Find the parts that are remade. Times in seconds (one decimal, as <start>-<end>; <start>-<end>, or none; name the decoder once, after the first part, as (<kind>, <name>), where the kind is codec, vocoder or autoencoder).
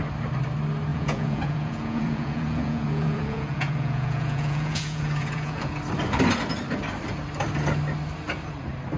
0.9-5.8 (vocoder, Vocos)